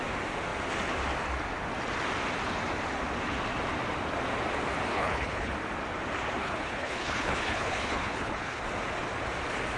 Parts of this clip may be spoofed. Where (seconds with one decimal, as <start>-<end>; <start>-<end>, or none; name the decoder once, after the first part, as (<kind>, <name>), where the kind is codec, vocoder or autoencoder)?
4.9-5.5 (codec, HILCodec); 6.4-8.6